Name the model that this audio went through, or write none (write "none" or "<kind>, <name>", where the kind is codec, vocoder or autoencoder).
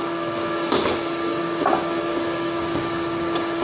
codec, DAC